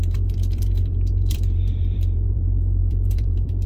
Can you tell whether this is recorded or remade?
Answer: remade